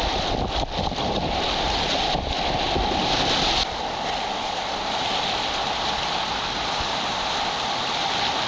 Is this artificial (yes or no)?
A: no